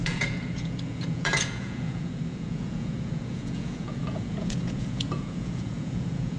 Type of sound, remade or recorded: remade